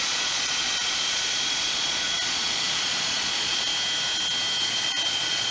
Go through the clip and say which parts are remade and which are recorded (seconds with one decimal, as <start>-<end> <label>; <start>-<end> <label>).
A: 0.0-3.7 remade; 3.7-4.6 recorded; 4.6-5.5 remade